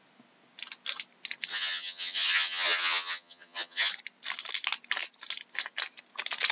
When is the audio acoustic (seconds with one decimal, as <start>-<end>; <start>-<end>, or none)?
0.0-1.5; 3.9-6.5